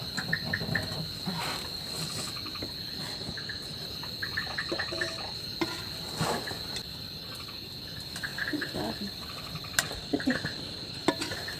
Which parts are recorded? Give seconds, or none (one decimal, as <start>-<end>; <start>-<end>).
0.0-11.6